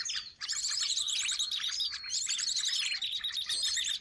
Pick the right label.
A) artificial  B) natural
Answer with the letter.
A